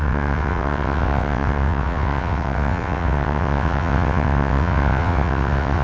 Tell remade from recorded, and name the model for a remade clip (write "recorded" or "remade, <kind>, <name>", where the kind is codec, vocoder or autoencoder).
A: remade, vocoder, WaveNeXt